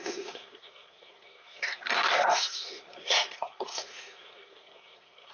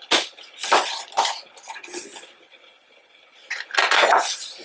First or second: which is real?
second